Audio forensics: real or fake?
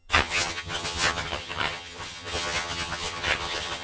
fake